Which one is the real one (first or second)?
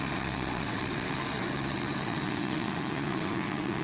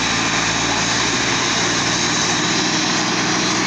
second